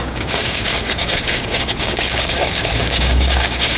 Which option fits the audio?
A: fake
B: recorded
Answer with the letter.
A